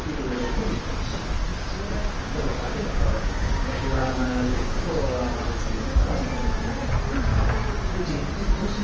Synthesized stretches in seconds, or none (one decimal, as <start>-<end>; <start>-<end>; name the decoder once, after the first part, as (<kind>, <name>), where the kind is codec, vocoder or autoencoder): 2.5-5.2 (codec, DAC); 7.3-8.0